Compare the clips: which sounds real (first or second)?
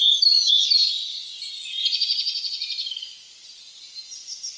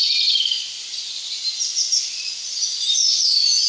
first